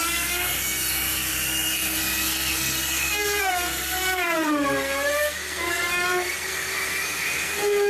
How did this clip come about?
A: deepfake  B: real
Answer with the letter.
A